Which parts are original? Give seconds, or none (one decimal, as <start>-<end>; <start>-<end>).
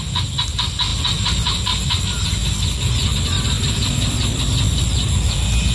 0.0-3.0; 4.4-5.7